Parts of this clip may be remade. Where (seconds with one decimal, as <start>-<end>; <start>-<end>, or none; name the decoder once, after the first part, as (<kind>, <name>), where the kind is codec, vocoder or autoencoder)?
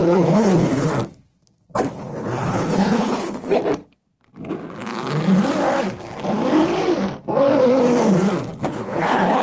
0.0-0.9 (codec, HILCodec); 1.9-3.6; 8.7-9.4